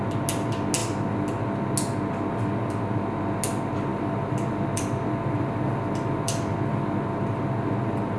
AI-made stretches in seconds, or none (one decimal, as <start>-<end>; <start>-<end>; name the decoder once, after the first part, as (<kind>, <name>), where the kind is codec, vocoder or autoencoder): 3.9-8.2 (vocoder, BigVGAN v2)